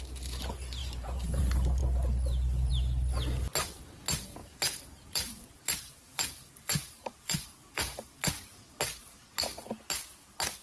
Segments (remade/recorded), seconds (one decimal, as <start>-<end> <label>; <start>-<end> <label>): 0.0-0.8 recorded; 0.8-1.4 remade; 1.4-4.4 recorded; 4.4-8.2 remade; 8.2-10.6 recorded